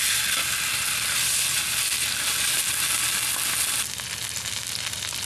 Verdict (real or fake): real